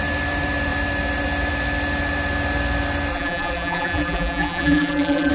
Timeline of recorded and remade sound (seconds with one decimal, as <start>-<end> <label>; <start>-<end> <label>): 0.0-3.1 recorded; 3.1-5.3 remade